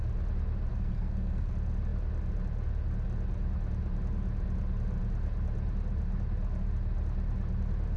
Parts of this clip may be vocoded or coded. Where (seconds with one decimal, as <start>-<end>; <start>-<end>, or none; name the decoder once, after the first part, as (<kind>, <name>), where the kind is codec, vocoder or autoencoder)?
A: 0.7-1.5 (codec, SNAC)

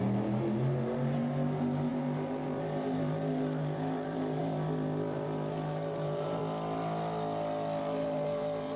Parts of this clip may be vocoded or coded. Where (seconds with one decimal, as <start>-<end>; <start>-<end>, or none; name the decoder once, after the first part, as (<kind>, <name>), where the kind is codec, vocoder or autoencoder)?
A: 0.0-6.4 (vocoder, BigVGAN v2); 7.8-8.8

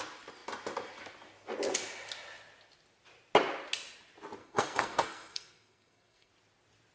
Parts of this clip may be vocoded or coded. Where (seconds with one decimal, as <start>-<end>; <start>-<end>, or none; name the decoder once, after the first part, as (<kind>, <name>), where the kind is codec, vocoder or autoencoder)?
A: 4.4-6.3 (codec, SNAC)

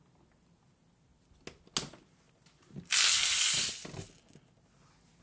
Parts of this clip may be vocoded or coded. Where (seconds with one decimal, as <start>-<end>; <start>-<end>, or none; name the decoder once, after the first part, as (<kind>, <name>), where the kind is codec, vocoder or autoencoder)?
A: none

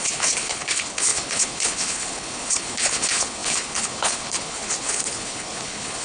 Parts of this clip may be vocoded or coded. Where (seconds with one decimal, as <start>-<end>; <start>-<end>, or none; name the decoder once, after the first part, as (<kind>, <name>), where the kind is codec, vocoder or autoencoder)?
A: 0.0-6.0 (codec, HILCodec)

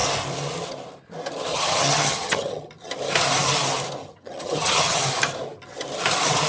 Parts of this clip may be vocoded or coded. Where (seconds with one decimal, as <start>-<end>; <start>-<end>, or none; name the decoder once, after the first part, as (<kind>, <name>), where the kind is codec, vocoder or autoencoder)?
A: 1.5-2.9 (vocoder, HiFi-GAN); 4.0-5.0